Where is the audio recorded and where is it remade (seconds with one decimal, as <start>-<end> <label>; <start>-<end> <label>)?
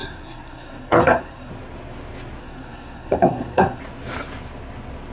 0.0-1.5 remade; 1.5-2.4 recorded; 2.4-3.8 remade; 3.8-5.1 recorded